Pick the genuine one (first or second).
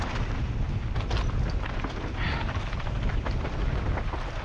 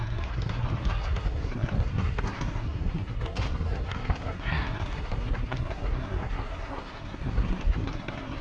first